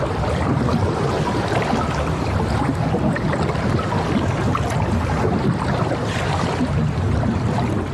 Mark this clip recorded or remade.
recorded